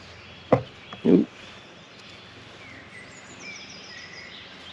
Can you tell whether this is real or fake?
real